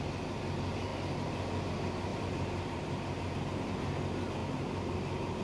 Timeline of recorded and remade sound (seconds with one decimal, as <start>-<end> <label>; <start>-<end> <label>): 0.0-2.1 recorded; 2.1-3.2 remade; 3.2-5.4 recorded